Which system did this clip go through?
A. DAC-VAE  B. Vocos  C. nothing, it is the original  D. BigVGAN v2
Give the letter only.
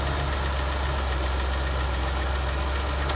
C